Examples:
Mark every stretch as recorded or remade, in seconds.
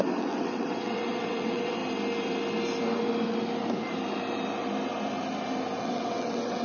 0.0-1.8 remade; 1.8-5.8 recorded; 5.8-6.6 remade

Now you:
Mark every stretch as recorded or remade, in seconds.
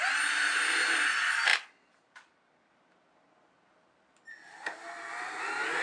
0.0-5.8 recorded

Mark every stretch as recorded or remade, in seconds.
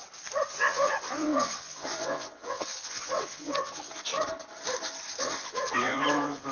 0.0-0.5 recorded; 0.5-4.1 remade; 4.1-5.2 recorded; 5.2-6.5 remade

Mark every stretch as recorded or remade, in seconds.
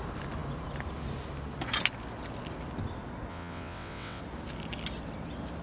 0.0-3.3 recorded; 3.3-4.2 remade; 4.2-5.6 recorded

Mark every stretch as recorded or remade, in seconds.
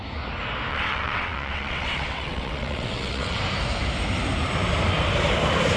0.0-0.7 recorded; 0.7-3.4 remade; 3.4-5.8 recorded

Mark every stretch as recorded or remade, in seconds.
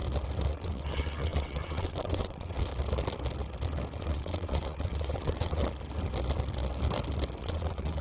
0.0-0.5 recorded; 0.5-2.7 remade; 2.7-4.0 recorded; 4.0-5.6 remade; 5.6-7.4 recorded; 7.4-8.0 remade